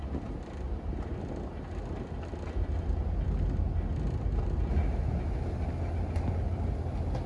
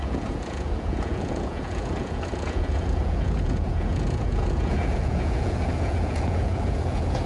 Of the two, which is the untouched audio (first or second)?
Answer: first